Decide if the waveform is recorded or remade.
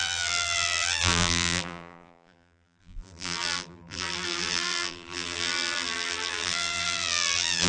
remade